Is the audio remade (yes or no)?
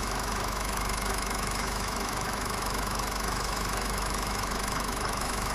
yes